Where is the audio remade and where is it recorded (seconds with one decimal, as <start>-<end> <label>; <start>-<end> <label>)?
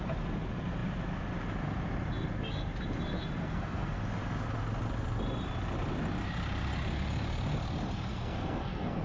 0.0-3.4 recorded; 3.4-4.0 remade; 4.0-8.1 recorded; 8.1-9.0 remade